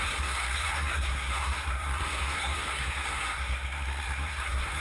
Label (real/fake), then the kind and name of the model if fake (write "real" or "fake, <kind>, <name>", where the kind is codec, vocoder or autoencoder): fake, codec, SNAC